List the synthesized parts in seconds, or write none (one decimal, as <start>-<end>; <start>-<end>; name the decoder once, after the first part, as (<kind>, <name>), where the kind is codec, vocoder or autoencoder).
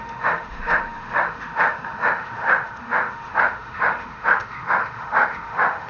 0.0-5.9 (autoencoder, DAC-VAE)